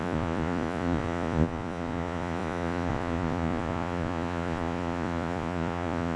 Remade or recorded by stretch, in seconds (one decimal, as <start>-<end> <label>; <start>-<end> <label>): 0.0-6.2 remade